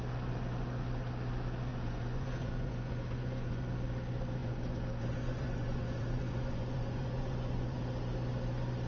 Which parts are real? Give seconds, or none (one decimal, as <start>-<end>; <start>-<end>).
0.0-1.7; 3.6-4.4; 7.8-8.9